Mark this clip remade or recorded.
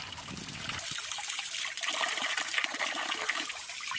recorded